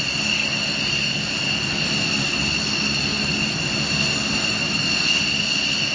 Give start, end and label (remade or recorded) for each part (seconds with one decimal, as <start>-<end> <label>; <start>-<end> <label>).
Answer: 0.0-5.9 recorded